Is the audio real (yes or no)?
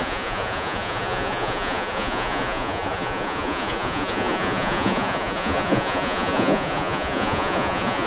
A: no